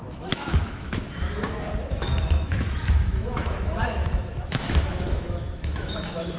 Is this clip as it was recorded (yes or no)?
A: no